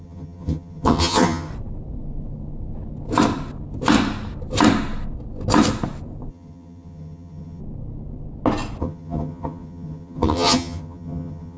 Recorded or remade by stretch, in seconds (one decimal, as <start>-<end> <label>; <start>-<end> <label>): 0.0-1.5 remade; 1.5-6.3 recorded; 6.3-7.6 remade; 7.6-8.8 recorded; 8.8-11.6 remade